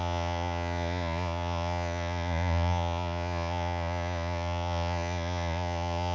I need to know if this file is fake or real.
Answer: fake